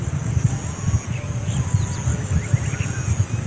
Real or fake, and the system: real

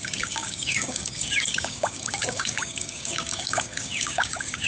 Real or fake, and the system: fake, codec, DAC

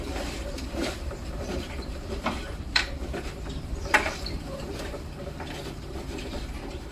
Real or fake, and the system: fake, vocoder, BigVGAN v2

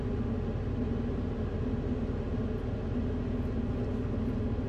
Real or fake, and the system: real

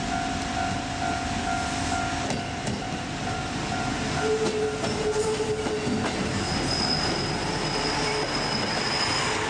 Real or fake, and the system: real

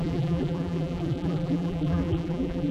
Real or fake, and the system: fake, vocoder, BigVGAN v2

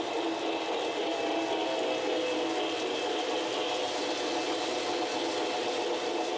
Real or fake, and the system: real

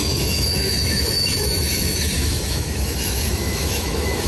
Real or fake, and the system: fake, autoencoder, DAC-VAE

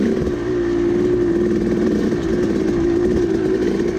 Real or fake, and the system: real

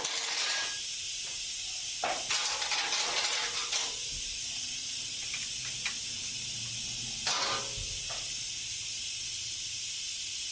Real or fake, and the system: real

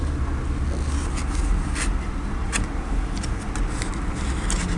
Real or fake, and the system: real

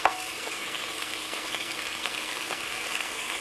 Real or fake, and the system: fake, codec, SNAC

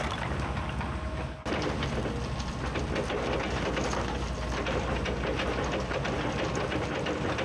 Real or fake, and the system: real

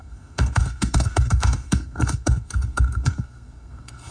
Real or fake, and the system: fake, codec, SNAC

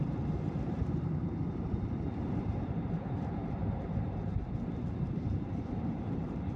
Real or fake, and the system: fake, vocoder, BigVGAN v2